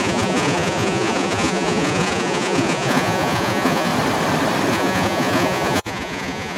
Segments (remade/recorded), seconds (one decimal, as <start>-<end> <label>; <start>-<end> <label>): 0.0-3.9 remade; 3.9-4.7 recorded; 4.7-6.6 remade